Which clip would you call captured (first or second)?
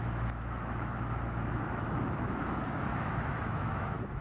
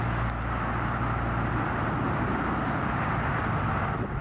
second